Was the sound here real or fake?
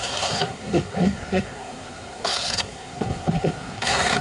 fake